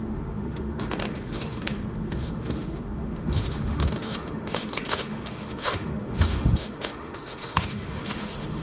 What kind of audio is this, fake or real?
fake